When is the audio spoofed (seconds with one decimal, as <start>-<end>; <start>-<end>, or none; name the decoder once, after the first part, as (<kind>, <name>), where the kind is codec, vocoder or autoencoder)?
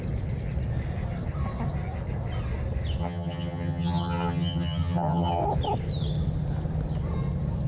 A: 3.0-5.4 (vocoder, HiFi-GAN)